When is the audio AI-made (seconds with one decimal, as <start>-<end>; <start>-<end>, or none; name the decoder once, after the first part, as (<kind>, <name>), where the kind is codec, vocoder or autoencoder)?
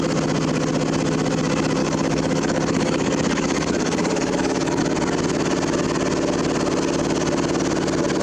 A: 1.8-4.8 (codec, DAC)